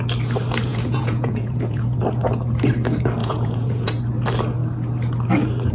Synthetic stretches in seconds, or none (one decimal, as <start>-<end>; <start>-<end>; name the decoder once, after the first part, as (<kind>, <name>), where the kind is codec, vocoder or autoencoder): 0.7-2.0 (vocoder, Vocos); 3.2-4.0